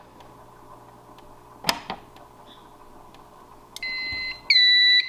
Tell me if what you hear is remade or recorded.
recorded